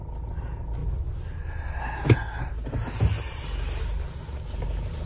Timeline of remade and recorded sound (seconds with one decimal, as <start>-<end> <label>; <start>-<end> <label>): 0.0-5.1 recorded